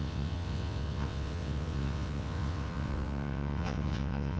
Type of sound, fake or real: fake